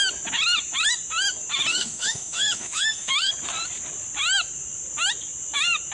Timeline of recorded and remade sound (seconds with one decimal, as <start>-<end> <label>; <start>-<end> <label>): 0.0-1.7 recorded; 1.7-3.3 remade; 3.3-5.9 recorded